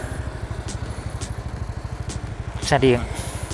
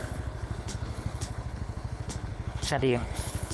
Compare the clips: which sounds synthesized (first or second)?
second